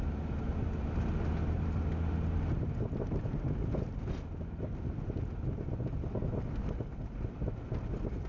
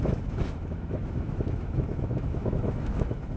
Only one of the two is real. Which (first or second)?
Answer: first